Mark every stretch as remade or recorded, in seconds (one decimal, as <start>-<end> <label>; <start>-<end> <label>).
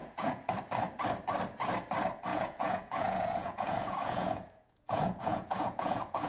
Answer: 0.0-0.5 remade; 0.5-2.3 recorded; 2.3-6.3 remade